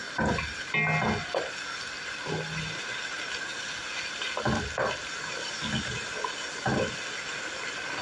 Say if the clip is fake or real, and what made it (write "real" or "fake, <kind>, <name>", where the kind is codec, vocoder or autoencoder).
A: real